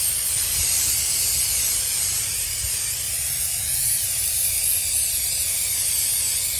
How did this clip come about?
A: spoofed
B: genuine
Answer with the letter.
B